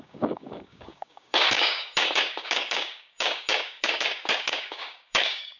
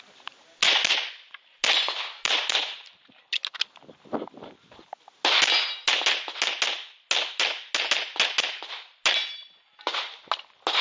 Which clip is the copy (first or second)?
first